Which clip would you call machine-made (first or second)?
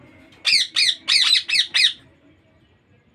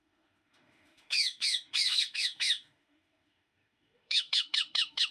second